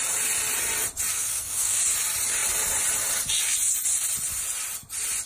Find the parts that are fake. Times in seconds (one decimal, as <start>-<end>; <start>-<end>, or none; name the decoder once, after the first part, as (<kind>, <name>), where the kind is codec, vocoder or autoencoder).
1.1-1.8 (codec, SNAC)

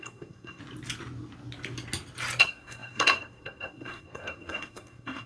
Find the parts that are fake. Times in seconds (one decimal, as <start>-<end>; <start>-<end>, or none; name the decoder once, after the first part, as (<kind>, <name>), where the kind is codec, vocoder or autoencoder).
0.0-0.6 (codec, SNAC); 2.4-5.3